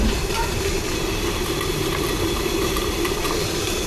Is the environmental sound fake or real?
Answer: fake